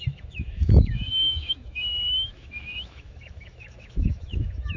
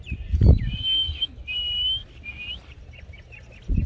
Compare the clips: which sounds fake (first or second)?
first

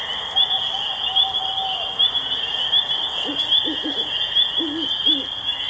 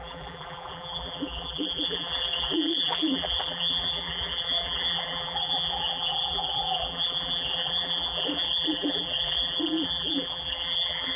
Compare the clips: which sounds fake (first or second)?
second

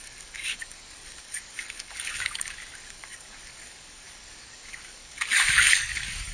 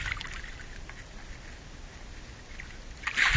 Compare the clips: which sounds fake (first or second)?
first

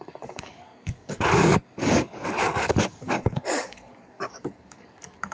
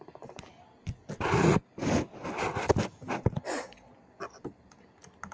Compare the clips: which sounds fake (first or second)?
first